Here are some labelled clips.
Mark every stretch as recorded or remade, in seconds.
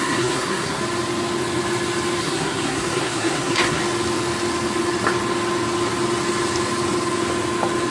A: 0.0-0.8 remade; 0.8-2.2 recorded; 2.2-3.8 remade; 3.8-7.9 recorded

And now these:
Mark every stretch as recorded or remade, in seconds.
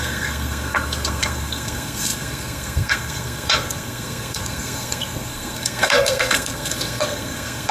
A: 0.0-7.7 remade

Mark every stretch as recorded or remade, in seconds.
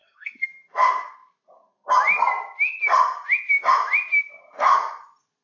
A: 0.0-0.5 remade; 0.5-5.4 recorded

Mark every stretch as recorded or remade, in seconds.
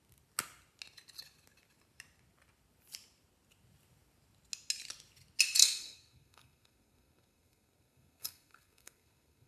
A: 0.0-5.6 recorded; 5.6-9.5 remade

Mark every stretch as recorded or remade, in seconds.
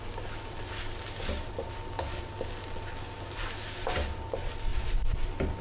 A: 0.0-5.6 recorded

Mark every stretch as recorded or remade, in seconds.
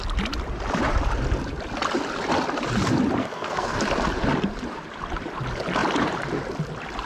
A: 0.0-3.2 recorded; 3.2-3.8 remade; 3.8-7.1 recorded